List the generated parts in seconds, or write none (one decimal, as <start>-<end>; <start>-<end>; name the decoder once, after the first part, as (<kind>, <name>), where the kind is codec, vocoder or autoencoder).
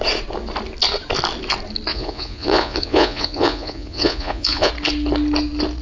1.9-4.7 (vocoder, Vocos)